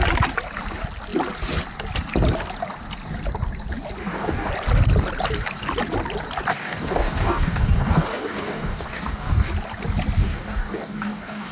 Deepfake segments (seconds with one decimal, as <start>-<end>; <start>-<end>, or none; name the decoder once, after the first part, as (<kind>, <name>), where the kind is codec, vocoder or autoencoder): 4.0-4.5 (codec, DAC); 6.5-9.5; 10.2-11.5